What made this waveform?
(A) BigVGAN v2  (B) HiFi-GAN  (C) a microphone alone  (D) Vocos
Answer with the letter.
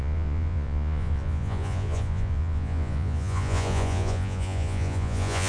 D